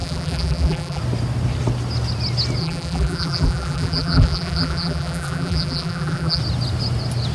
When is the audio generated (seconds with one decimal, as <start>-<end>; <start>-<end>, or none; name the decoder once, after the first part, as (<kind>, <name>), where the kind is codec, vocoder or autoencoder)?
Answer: 0.0-1.0 (vocoder, BigVGAN v2); 2.6-6.4